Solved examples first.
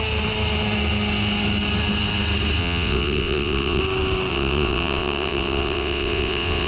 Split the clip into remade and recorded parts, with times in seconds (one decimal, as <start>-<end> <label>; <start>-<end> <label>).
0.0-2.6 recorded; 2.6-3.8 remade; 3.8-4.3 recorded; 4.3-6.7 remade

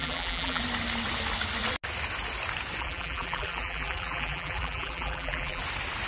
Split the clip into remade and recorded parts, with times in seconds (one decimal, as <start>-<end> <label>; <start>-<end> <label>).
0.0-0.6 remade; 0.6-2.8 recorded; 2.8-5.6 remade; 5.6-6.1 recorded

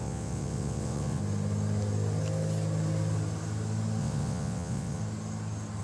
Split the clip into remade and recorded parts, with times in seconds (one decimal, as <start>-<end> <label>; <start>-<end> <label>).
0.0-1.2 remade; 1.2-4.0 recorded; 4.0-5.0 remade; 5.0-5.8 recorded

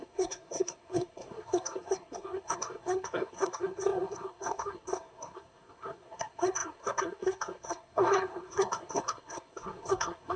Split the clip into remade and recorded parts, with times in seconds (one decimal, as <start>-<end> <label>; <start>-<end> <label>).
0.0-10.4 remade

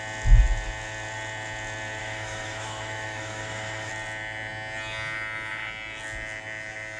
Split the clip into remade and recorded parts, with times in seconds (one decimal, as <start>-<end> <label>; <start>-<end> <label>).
0.0-2.0 recorded; 2.0-3.9 remade; 3.9-7.0 recorded